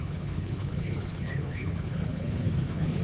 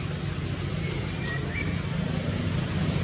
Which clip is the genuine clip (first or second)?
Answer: second